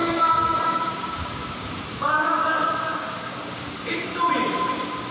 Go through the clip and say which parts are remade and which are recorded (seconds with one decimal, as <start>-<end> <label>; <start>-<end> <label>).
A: 0.0-4.1 remade; 4.1-5.1 recorded